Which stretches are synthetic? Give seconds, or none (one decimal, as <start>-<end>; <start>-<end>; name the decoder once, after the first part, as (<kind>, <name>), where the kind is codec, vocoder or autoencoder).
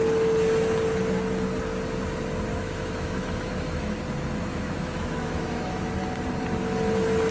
2.5-3.9 (autoencoder, DAC-VAE); 4.5-5.8